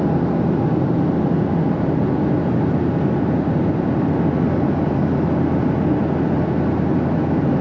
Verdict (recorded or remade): recorded